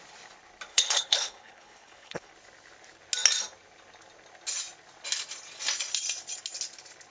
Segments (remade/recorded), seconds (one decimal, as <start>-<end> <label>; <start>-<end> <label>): 0.0-0.7 recorded; 0.7-2.3 remade; 2.3-7.1 recorded